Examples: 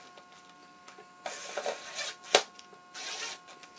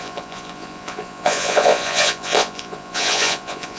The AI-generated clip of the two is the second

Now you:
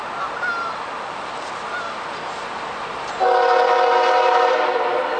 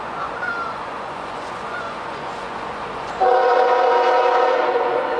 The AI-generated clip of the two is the second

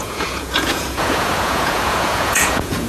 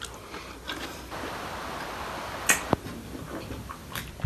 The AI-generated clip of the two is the first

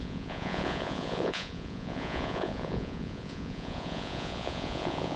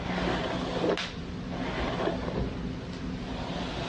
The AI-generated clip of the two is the first